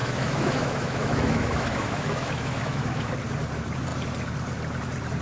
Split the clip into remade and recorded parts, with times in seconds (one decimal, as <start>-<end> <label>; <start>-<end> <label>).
0.0-3.1 remade; 3.1-5.2 recorded